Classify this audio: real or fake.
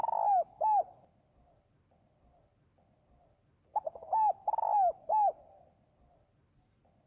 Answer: real